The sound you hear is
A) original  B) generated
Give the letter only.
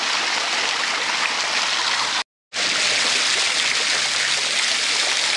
A